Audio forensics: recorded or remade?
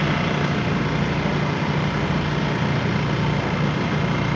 recorded